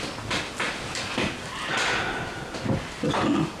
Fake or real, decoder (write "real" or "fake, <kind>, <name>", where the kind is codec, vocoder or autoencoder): real